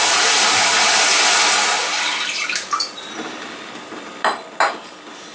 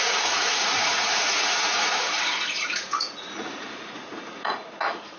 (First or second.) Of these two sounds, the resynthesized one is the second